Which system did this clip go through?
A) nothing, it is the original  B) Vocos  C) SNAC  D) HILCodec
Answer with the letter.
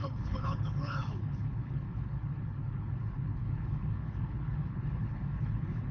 D